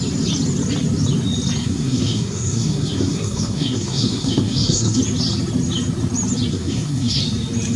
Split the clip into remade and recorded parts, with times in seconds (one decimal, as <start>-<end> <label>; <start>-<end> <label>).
0.0-1.6 recorded; 1.6-5.0 remade; 5.0-6.5 recorded; 6.5-7.2 remade; 7.2-7.8 recorded